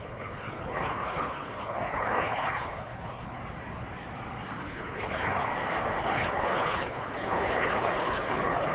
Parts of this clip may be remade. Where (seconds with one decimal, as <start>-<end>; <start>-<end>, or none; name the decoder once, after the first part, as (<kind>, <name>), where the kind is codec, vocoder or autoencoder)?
0.0-3.4 (codec, HILCodec); 4.6-5.5; 6.0-8.7